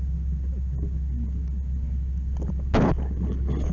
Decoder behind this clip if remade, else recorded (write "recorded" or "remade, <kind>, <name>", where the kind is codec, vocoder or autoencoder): recorded